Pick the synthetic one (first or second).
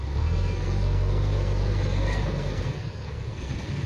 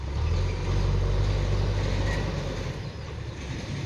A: first